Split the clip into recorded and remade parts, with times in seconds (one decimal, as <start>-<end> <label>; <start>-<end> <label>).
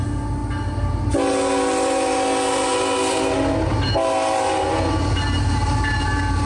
0.0-6.5 recorded